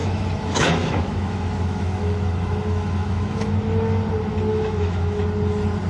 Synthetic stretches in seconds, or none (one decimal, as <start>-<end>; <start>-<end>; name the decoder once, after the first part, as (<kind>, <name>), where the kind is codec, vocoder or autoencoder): 0.0-3.5 (autoencoder, DAC-VAE); 4.5-5.2